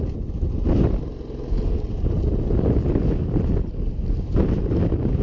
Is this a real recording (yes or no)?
yes